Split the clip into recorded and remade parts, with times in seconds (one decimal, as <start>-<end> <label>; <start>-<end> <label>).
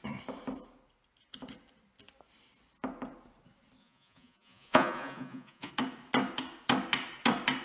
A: 0.0-3.8 recorded; 3.8-5.7 remade; 5.7-7.6 recorded